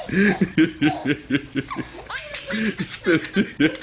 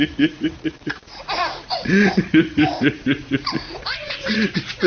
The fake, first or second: second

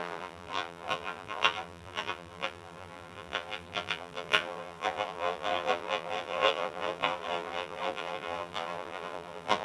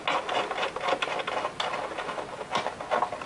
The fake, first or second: first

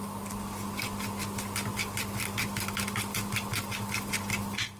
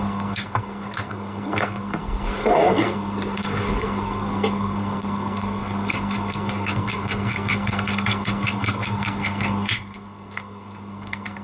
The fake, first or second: second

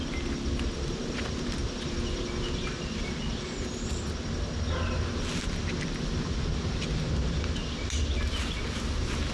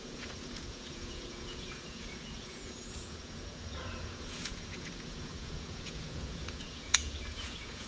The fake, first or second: second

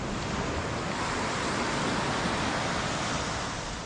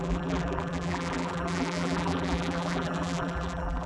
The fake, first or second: second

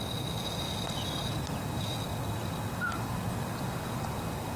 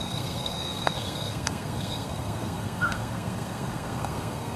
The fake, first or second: second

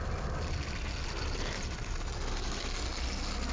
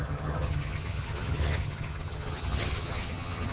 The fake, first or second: second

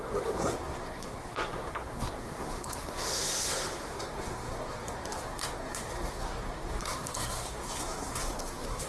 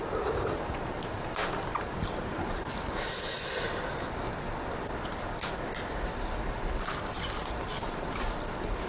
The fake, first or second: first